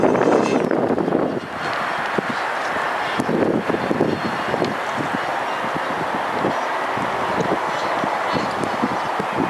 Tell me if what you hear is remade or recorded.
recorded